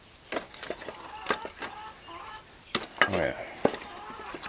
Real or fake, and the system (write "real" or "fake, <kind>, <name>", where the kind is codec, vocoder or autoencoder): real